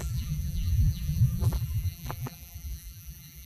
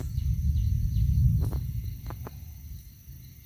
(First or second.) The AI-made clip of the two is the first